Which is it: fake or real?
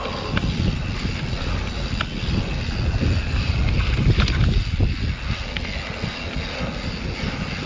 real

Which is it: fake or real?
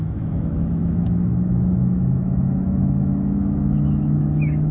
fake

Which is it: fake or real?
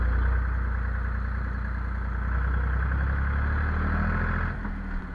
real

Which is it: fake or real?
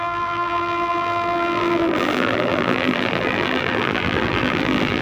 fake